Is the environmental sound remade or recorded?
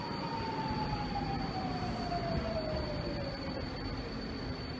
recorded